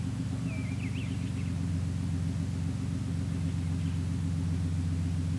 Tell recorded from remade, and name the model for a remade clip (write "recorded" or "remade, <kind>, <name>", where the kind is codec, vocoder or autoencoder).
recorded